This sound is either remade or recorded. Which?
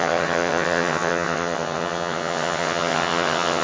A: remade